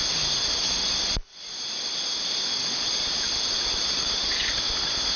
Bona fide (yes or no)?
yes